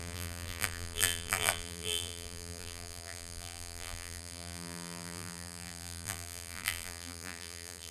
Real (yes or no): no